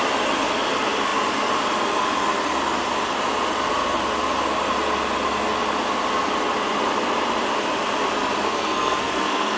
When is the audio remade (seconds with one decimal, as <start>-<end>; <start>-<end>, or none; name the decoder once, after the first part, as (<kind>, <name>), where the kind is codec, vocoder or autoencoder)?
8.4-9.6 (codec, SNAC)